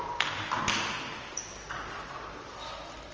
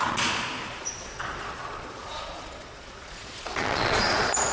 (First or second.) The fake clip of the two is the second